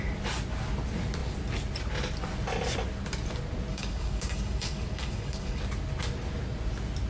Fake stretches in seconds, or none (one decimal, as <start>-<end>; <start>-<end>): 3.7-5.6